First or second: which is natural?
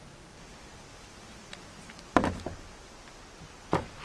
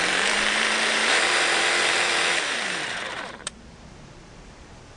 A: first